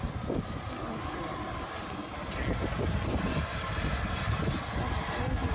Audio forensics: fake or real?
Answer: real